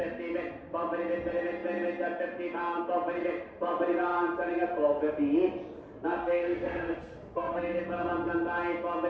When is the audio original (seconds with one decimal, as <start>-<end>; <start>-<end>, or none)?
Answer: 0.0-6.2; 7.8-9.1